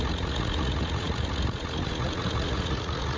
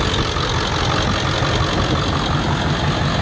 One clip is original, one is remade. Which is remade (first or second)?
first